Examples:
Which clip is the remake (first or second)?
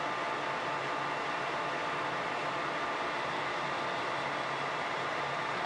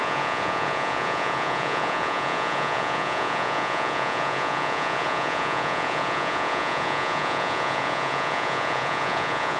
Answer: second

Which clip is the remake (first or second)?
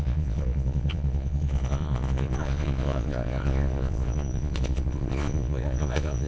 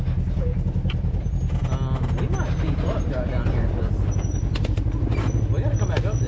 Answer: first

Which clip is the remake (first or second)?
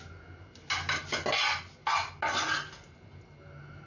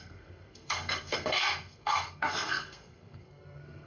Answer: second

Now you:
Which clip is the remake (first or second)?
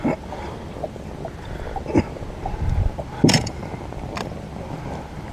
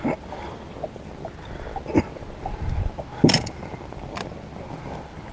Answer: first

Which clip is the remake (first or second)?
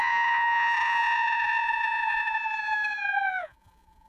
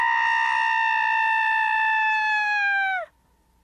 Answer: first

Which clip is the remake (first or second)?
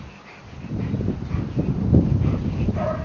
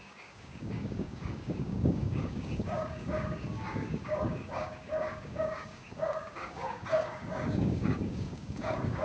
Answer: second